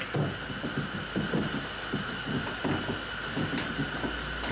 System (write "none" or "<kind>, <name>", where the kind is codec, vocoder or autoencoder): none